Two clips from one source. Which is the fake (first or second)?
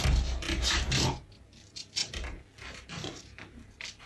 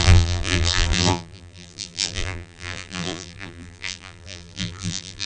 second